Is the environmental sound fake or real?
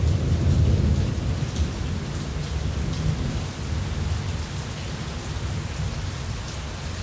real